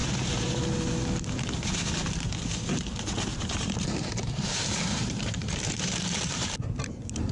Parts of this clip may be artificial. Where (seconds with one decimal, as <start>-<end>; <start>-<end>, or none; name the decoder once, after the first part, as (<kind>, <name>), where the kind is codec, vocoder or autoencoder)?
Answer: 0.0-0.6 (vocoder, BigVGAN v2); 3.3-6.5